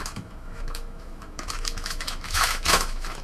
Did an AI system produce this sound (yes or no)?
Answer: yes